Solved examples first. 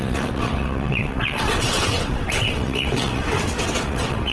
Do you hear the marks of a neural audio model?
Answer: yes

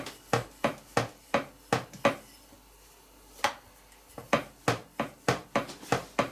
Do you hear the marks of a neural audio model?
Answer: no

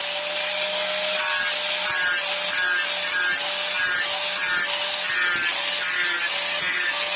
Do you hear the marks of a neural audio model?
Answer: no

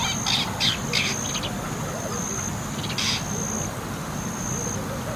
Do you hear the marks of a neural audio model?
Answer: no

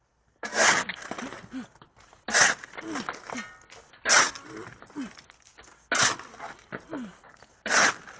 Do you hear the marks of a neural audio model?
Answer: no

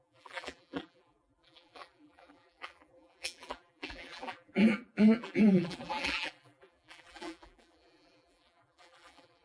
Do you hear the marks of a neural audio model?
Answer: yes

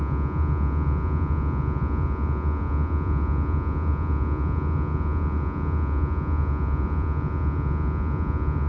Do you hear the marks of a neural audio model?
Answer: yes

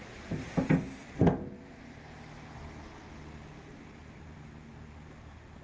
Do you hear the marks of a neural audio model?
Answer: no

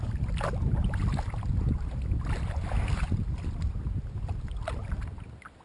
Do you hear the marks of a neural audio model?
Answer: no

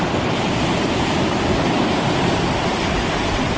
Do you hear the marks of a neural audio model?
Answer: no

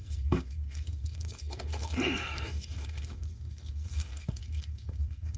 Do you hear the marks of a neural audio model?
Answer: yes